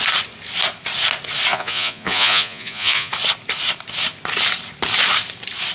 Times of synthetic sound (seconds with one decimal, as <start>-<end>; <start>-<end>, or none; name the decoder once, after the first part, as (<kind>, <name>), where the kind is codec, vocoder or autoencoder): 1.5-3.1 (vocoder, Vocos)